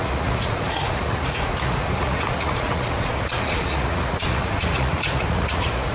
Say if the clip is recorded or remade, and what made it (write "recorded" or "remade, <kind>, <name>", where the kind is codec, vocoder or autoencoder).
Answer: remade, vocoder, Vocos